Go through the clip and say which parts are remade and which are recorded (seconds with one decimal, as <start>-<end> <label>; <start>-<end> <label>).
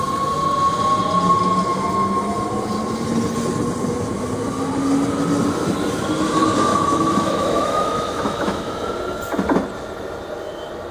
0.0-6.7 recorded; 6.7-8.7 remade; 8.7-10.9 recorded